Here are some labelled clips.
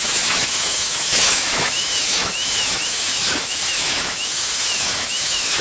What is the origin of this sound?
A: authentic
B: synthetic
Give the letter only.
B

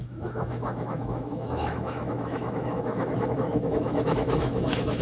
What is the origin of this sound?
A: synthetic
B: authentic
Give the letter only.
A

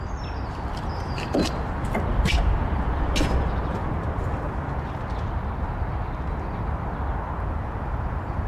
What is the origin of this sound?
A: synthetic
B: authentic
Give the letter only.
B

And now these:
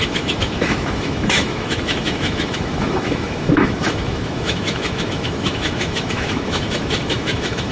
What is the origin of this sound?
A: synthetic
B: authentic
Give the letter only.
A